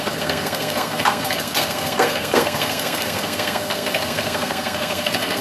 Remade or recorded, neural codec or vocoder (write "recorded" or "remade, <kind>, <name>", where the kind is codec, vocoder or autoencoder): remade, codec, SNAC